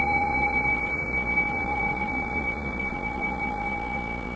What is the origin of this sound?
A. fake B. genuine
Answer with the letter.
A